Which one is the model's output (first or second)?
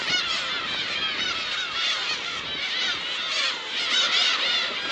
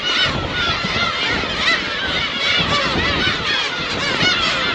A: first